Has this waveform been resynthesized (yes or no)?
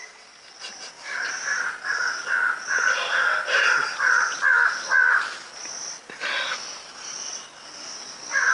no